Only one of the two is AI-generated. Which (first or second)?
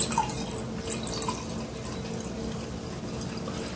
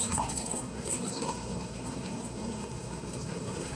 second